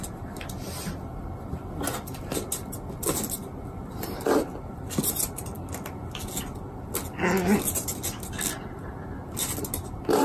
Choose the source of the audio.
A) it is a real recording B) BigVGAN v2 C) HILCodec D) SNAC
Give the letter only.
A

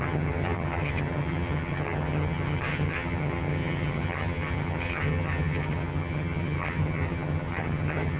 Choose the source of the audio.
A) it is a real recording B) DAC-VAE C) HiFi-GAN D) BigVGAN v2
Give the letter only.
C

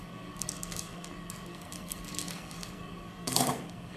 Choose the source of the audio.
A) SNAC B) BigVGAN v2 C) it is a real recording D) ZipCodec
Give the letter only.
A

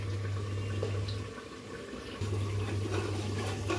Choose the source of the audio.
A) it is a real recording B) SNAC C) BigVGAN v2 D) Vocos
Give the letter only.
A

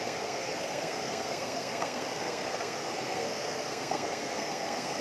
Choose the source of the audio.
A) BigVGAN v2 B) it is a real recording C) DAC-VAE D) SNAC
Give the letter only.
D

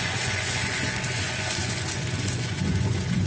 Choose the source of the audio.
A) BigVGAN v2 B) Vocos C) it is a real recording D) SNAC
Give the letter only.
B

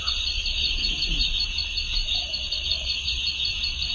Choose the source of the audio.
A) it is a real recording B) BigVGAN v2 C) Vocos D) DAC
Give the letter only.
C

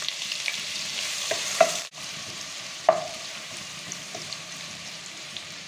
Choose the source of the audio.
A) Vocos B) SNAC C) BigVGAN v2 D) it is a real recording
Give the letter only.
C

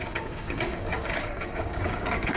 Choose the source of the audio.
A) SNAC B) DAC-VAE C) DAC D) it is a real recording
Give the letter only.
C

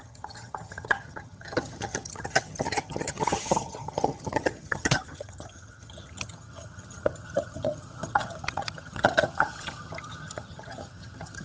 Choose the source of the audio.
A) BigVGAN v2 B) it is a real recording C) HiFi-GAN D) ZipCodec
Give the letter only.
C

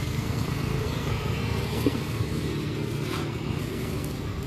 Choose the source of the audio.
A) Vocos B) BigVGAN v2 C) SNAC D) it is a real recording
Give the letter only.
C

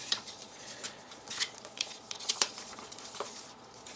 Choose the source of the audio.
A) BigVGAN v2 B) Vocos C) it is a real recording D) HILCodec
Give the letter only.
B